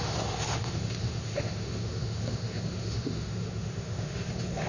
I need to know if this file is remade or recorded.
remade